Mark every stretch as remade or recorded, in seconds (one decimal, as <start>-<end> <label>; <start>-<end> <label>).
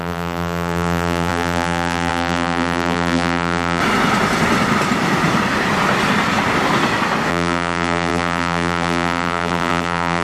0.0-3.8 remade; 3.8-7.3 recorded; 7.3-10.2 remade